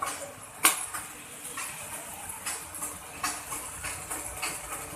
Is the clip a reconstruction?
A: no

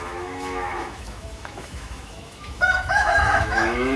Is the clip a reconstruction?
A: yes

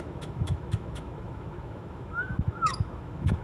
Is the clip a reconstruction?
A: yes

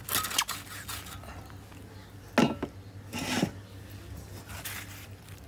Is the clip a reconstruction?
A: no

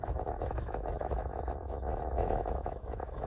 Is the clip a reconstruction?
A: yes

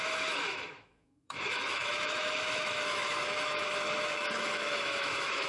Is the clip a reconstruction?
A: yes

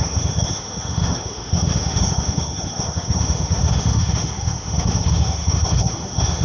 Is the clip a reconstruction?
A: yes